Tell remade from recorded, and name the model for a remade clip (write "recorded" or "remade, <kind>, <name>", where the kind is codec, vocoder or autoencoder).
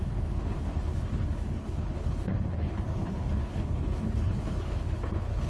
remade, codec, HILCodec